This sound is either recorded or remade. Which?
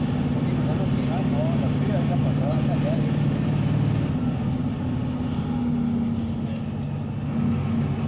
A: recorded